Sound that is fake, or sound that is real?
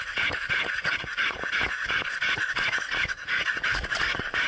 fake